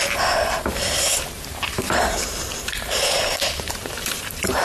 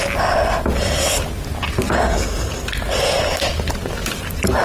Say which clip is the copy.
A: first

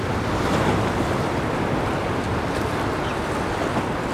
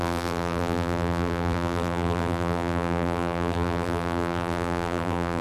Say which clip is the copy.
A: second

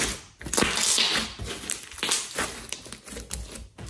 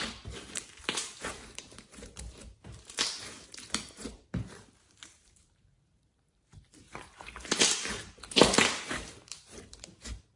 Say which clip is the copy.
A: second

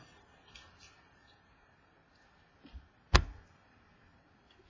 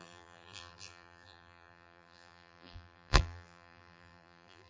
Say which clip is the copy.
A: second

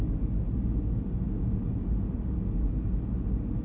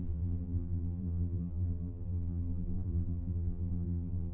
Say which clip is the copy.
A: second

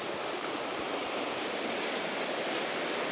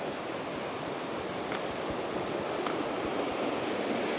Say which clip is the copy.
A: first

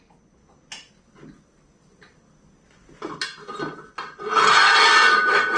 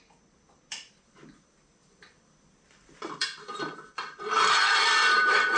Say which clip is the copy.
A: second